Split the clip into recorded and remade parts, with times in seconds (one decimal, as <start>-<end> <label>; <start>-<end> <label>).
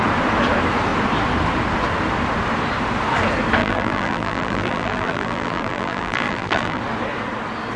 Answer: 0.0-3.6 recorded; 3.6-6.8 remade; 6.8-7.8 recorded